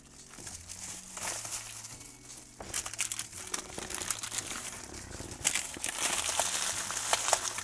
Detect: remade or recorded recorded